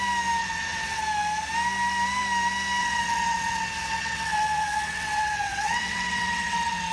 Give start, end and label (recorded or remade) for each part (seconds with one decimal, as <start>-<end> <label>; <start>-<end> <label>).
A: 0.0-0.4 recorded; 0.4-1.0 remade; 1.0-2.8 recorded; 2.8-6.9 remade

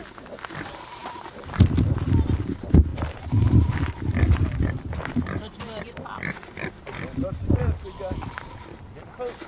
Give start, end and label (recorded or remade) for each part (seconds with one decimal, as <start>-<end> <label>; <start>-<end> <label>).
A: 0.0-2.9 recorded; 2.9-8.2 remade; 8.2-9.5 recorded

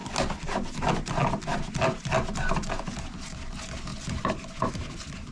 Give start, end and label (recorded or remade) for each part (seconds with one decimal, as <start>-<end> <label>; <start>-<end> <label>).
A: 0.0-5.3 recorded

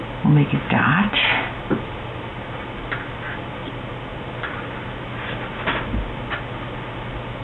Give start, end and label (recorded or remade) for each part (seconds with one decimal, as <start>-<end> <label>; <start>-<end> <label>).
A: 0.0-7.4 recorded

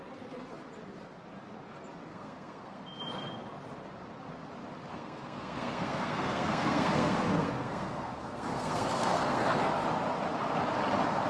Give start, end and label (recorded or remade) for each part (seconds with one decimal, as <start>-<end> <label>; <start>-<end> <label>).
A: 0.0-2.1 recorded; 2.1-2.8 remade; 2.8-4.9 recorded; 4.9-9.7 remade; 9.7-11.3 recorded

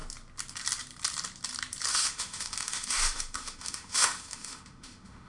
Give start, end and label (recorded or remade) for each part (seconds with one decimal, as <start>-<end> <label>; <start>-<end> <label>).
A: 0.0-1.9 recorded; 1.9-5.3 remade